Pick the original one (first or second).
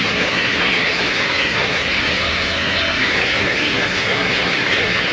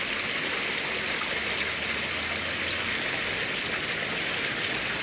second